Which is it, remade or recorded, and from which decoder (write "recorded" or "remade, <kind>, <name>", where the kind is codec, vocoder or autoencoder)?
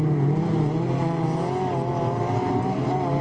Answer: recorded